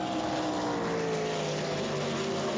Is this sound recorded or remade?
recorded